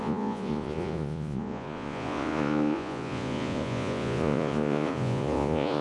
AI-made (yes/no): yes